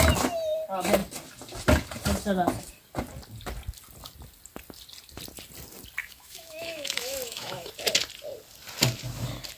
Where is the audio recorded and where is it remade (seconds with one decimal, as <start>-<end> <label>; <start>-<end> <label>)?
0.0-6.0 recorded; 6.0-7.7 remade; 7.7-9.6 recorded